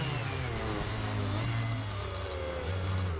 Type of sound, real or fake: real